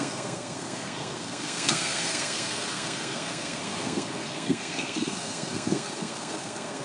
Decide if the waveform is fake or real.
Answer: fake